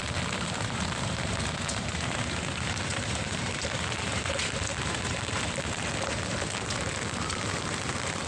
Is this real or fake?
fake